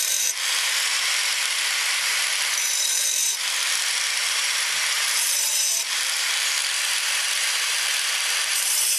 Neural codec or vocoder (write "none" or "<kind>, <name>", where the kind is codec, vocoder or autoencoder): vocoder, BigVGAN v2